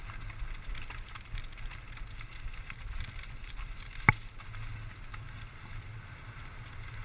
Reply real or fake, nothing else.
real